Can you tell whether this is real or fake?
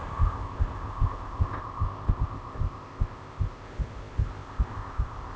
fake